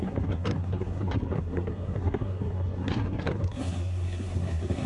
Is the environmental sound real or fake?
fake